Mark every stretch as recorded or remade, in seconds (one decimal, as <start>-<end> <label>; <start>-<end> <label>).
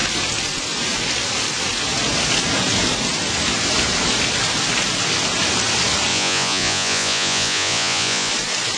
0.0-6.1 recorded; 6.1-8.3 remade; 8.3-8.8 recorded